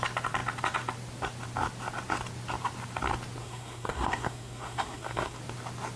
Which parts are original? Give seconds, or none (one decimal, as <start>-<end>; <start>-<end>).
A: 0.0-3.4; 5.4-6.0